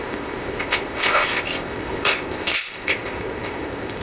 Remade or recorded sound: remade